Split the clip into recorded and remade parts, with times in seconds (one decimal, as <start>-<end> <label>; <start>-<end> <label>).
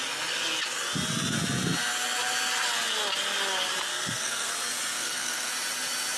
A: 0.0-3.9 recorded; 3.9-4.5 remade; 4.5-4.9 recorded; 4.9-5.5 remade; 5.5-6.2 recorded